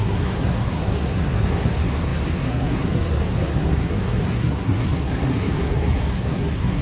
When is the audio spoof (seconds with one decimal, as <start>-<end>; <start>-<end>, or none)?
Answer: 0.0-6.8